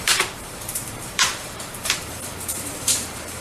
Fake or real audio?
fake